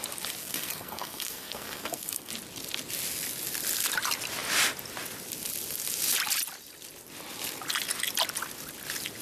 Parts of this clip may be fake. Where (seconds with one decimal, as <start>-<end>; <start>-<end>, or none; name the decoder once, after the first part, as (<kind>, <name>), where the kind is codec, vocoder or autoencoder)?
0.4-2.3 (codec, SNAC)